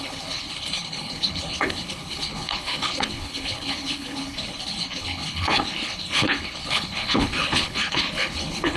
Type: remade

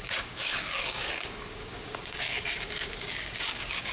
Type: remade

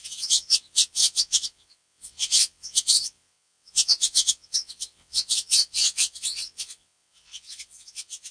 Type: remade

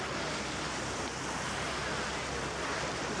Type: recorded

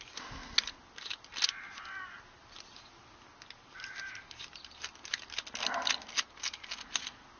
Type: recorded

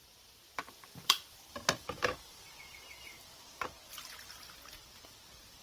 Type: recorded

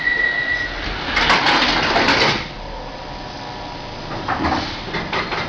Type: recorded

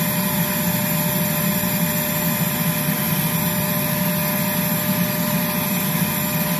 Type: recorded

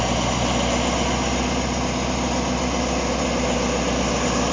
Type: recorded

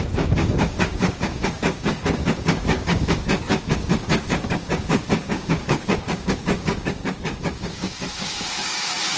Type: remade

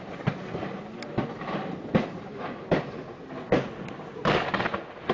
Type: recorded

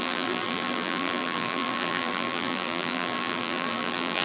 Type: remade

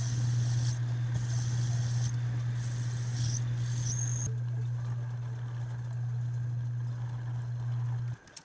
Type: recorded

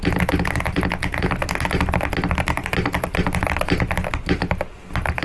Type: recorded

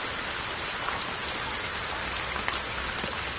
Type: recorded